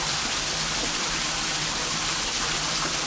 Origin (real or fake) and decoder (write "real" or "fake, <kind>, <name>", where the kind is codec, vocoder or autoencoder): fake, vocoder, BigVGAN v2